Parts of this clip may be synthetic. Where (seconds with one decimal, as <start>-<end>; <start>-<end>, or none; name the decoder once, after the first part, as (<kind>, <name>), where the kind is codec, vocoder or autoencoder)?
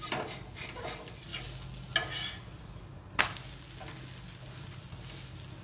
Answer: none